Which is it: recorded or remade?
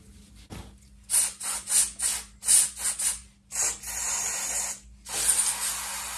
recorded